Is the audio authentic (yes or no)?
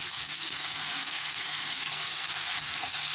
no